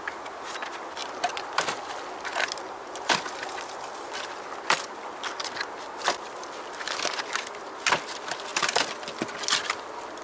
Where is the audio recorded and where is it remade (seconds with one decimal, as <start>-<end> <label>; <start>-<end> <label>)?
0.0-10.2 recorded